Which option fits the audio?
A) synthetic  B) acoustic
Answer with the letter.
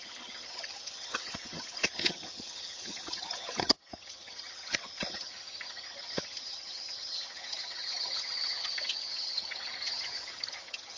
A